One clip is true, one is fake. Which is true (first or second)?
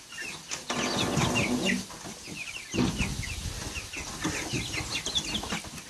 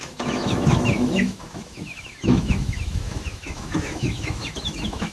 first